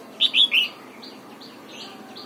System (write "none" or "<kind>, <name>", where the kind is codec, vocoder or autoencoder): none